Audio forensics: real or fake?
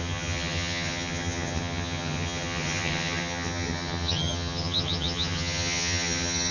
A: fake